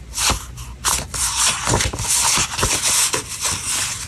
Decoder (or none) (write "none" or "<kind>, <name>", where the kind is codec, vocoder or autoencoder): none